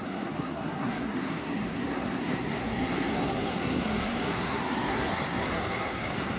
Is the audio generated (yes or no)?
yes